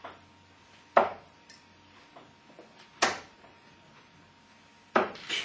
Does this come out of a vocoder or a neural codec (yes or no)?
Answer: no